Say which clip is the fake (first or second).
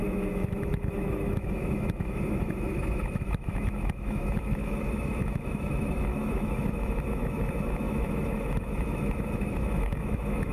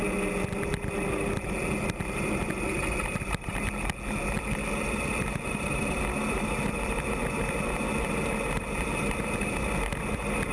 first